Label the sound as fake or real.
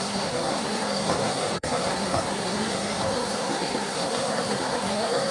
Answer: fake